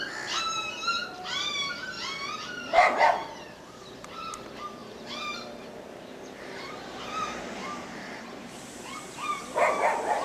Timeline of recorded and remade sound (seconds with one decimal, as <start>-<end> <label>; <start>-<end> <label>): 0.0-1.0 recorded; 1.0-1.7 remade; 1.7-4.8 recorded; 4.8-9.4 remade; 9.4-10.2 recorded